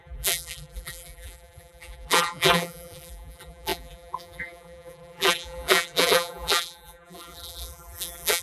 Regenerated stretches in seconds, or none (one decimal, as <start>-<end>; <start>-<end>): 0.0-8.4